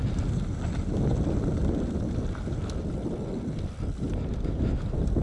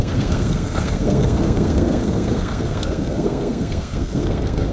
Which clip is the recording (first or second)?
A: first